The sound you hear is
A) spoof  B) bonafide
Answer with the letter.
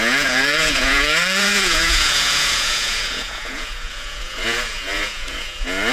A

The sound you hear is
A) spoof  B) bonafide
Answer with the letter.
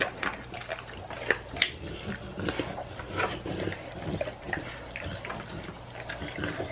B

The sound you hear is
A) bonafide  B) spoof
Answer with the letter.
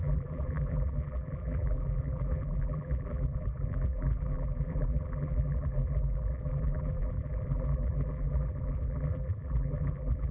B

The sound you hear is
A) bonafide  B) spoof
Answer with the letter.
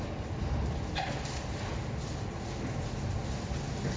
A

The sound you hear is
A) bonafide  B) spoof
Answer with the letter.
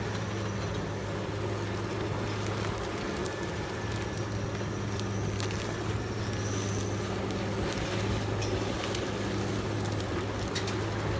A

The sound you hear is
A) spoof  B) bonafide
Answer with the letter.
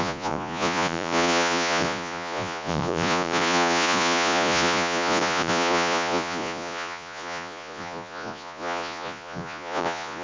A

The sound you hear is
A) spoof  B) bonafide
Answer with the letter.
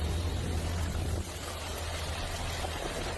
B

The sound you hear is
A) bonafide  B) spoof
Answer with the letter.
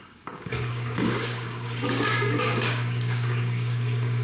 B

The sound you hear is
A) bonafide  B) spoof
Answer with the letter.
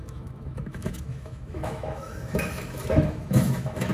B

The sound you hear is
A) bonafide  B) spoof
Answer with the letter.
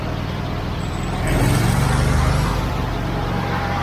A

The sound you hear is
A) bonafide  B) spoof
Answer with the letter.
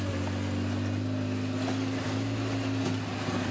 A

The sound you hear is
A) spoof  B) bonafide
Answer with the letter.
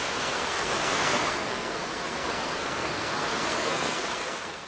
A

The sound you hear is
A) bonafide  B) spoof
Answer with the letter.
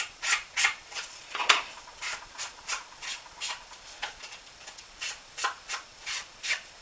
B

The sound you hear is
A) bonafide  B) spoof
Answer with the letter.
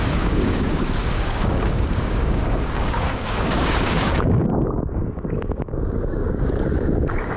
B